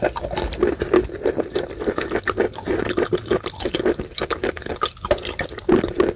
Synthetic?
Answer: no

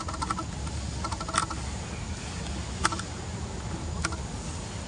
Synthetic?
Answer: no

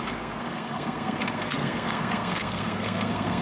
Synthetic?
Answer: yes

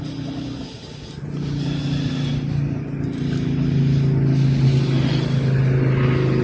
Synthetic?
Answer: no